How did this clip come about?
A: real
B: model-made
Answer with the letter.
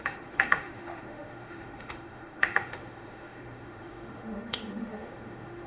B